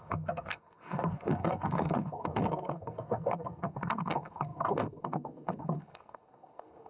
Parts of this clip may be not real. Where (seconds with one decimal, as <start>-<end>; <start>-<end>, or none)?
0.0-6.9